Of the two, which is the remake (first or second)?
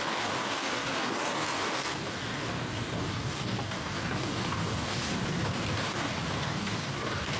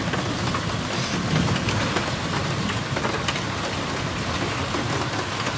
first